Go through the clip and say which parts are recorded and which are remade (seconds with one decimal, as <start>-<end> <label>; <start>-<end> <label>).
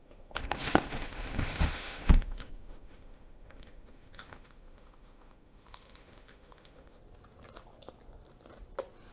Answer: 0.0-7.0 remade; 7.0-9.1 recorded